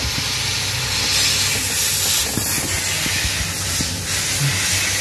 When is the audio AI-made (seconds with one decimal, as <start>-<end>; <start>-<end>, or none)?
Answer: none